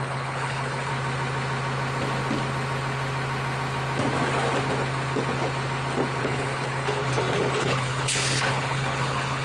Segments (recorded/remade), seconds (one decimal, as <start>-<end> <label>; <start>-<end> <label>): 0.0-0.9 remade; 0.9-6.2 recorded; 6.2-7.0 remade; 7.0-7.6 recorded; 7.6-9.4 remade